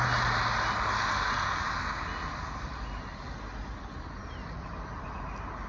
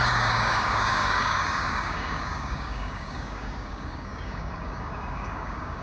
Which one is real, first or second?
first